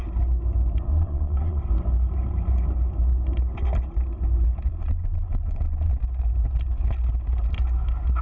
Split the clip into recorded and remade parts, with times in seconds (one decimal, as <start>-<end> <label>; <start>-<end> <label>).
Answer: 0.0-0.9 recorded; 0.9-1.6 remade; 1.6-4.7 recorded; 4.7-5.9 remade; 5.9-8.2 recorded